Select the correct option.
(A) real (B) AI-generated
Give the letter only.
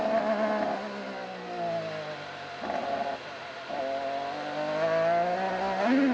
A